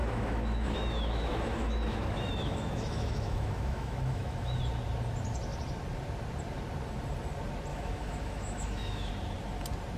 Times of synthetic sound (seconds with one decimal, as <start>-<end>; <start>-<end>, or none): 0.0-4.6; 7.7-9.1